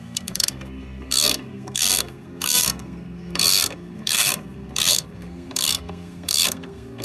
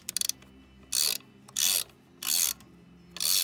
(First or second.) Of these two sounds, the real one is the second